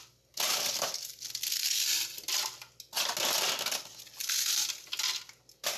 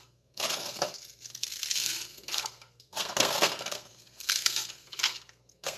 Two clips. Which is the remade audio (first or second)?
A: second